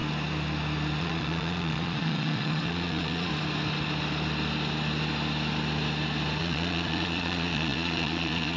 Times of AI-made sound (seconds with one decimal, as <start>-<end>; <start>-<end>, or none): 1.0-3.3; 6.4-8.6